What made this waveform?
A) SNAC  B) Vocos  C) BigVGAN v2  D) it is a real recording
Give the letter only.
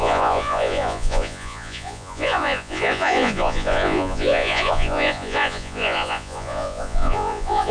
B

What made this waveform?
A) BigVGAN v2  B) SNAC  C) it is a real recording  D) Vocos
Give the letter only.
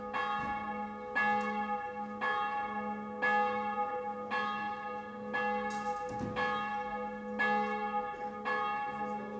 C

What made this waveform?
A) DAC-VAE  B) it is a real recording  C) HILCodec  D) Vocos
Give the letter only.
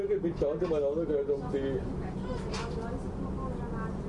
B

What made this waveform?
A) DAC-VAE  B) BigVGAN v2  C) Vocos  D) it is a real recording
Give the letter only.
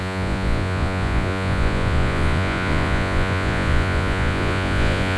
C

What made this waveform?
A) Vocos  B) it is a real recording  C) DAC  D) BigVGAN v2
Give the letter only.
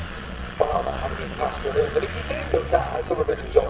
A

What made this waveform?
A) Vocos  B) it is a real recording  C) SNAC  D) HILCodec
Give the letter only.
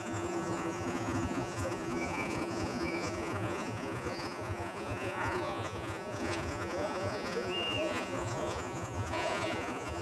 A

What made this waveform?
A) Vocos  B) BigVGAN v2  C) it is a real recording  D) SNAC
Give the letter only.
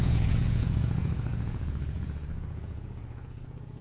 A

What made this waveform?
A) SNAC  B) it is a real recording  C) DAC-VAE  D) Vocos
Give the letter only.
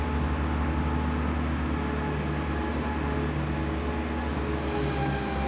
B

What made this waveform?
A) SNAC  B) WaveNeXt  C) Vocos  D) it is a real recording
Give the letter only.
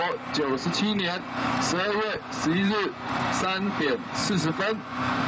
C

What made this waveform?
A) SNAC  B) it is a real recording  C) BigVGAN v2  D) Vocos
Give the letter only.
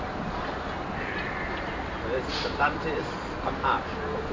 B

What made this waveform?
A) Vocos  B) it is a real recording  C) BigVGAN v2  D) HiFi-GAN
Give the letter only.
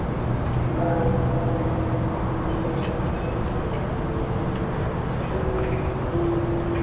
B